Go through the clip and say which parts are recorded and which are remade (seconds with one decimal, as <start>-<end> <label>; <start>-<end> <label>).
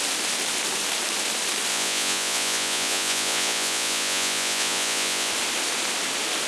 0.0-1.7 recorded; 1.7-5.3 remade; 5.3-6.5 recorded